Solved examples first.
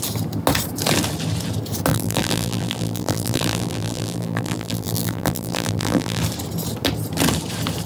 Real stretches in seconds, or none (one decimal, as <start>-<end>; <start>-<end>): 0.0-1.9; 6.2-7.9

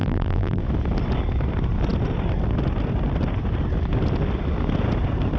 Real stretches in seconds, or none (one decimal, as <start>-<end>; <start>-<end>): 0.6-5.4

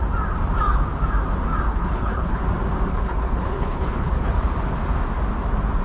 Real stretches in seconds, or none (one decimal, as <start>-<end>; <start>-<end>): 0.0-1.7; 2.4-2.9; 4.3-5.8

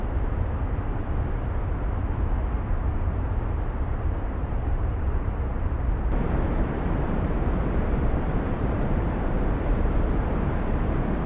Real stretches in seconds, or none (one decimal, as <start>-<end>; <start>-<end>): 0.0-2.9; 5.5-6.5